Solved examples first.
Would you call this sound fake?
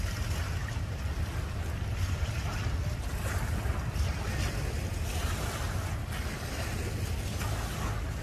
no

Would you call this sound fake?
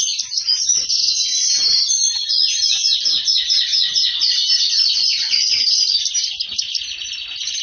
no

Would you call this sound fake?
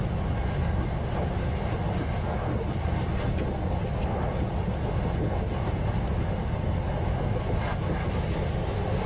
no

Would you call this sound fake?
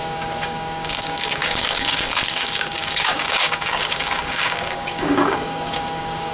yes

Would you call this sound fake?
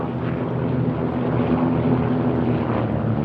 no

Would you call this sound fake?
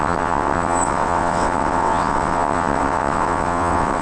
yes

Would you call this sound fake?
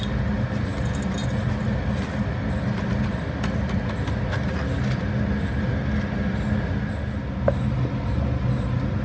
no